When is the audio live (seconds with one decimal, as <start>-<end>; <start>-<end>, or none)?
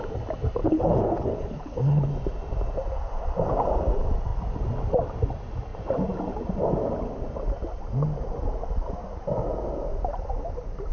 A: 0.0-0.6; 2.1-10.9